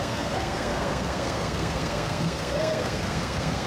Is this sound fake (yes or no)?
yes